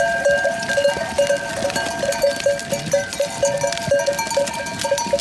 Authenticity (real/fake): real